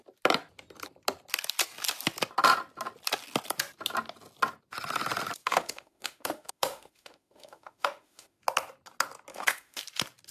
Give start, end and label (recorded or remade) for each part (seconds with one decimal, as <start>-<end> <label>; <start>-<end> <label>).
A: 0.0-5.4 recorded; 5.4-8.4 remade; 8.4-9.3 recorded; 9.3-9.8 remade; 9.8-10.3 recorded